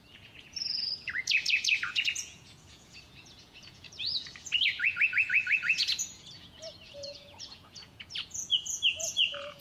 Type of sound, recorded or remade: remade